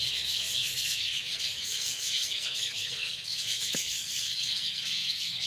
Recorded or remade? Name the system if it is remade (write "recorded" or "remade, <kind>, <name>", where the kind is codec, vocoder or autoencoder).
remade, codec, SNAC